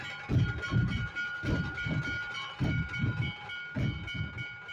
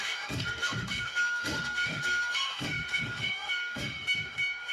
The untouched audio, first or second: first